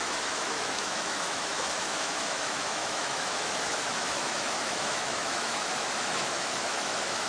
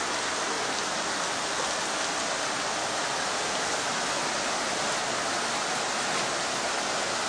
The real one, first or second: second